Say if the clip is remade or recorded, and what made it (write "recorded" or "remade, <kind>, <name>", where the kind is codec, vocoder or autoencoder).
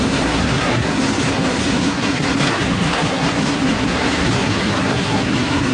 remade, codec, SNAC